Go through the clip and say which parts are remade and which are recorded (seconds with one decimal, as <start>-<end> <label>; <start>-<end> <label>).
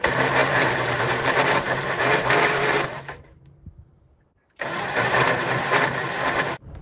0.0-6.8 remade